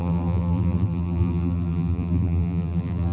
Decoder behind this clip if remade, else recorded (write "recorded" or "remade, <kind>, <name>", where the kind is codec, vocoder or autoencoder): remade, vocoder, BigVGAN v2